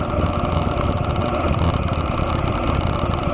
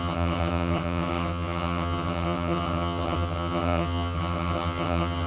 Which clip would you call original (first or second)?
first